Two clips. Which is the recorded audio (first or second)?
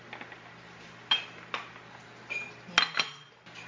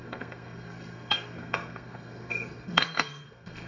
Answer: first